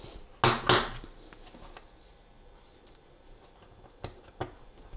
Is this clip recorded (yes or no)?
yes